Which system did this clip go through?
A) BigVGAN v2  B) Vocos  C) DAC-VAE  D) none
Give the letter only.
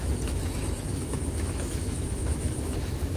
C